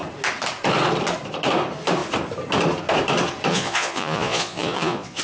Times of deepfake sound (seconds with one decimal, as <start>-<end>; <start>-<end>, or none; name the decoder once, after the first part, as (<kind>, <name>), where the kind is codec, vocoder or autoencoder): 3.5-5.2 (vocoder, Vocos)